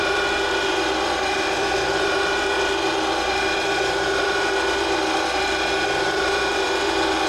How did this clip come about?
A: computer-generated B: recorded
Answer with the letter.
A